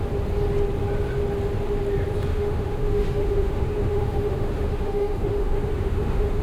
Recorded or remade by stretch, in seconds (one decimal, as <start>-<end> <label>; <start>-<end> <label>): 0.0-2.3 recorded; 2.3-6.4 remade

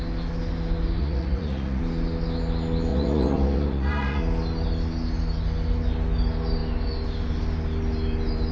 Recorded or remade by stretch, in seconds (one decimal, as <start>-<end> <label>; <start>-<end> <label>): 0.0-1.0 recorded; 1.0-1.8 remade; 1.8-2.9 recorded; 2.9-4.2 remade; 4.2-8.5 recorded

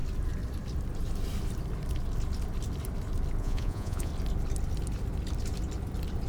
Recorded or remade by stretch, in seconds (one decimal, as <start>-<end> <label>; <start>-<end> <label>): 0.0-3.4 recorded; 3.4-4.1 remade; 4.1-6.3 recorded

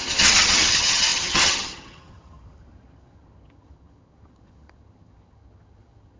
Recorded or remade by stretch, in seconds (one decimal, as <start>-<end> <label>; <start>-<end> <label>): 0.0-6.2 remade

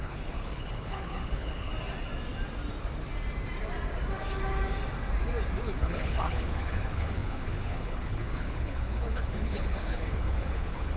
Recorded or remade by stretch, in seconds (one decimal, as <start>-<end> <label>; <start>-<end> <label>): 0.0-1.7 remade; 1.7-5.8 recorded; 5.8-11.0 remade

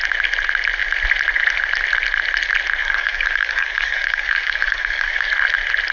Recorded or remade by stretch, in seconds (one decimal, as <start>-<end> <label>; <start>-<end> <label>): 0.0-2.8 recorded; 2.8-5.3 remade; 5.3-5.9 recorded

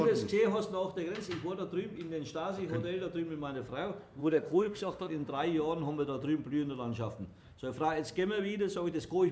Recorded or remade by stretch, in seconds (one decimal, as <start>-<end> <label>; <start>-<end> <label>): 0.0-4.2 recorded; 4.2-5.1 remade; 5.1-9.3 recorded

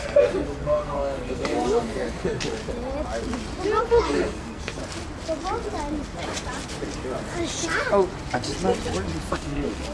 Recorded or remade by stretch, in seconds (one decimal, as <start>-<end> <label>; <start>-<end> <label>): 0.0-2.6 remade; 2.6-3.8 recorded; 3.8-4.8 remade; 4.8-9.3 recorded; 9.3-9.9 remade